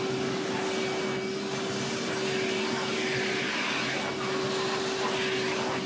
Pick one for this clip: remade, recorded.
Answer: recorded